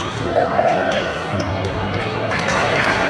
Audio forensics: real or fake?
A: fake